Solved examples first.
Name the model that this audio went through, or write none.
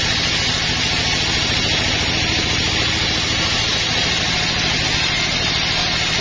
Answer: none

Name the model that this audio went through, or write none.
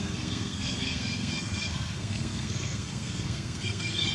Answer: codec, SNAC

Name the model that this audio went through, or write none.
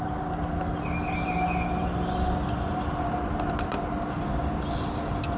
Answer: none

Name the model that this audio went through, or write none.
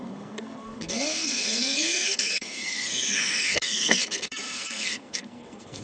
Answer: codec, SNAC